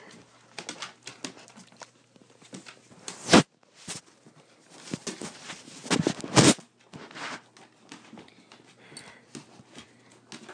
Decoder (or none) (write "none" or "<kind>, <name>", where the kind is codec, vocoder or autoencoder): none